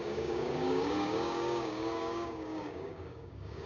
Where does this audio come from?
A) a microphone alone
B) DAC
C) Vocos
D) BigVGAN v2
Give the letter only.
B